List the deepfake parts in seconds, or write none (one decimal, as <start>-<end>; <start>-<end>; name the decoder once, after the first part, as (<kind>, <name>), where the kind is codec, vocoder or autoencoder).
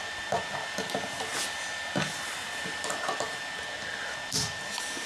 none